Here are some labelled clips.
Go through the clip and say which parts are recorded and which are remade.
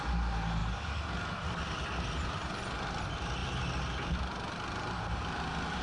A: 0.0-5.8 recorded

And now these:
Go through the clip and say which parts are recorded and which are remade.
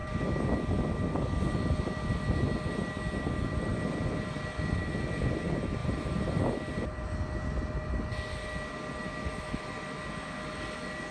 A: 0.0-5.8 recorded; 5.8-6.4 remade; 6.4-11.1 recorded